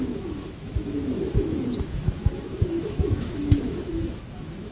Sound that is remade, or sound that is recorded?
remade